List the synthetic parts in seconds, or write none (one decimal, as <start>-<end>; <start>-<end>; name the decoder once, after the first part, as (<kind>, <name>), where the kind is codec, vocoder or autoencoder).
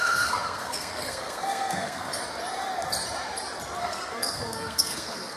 0.0-2.2 (codec, SNAC); 3.8-5.4